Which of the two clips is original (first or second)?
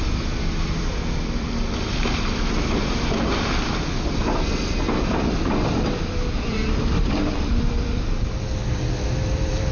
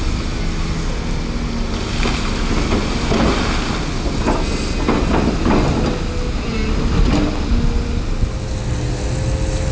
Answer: second